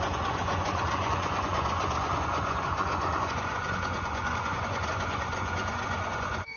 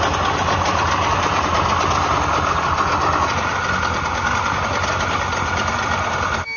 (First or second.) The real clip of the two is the second